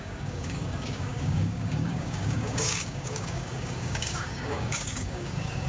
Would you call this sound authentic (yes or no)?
no